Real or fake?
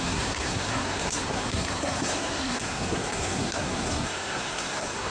fake